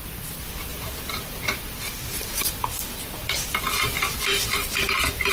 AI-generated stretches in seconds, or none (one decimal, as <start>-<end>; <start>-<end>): 0.0-5.3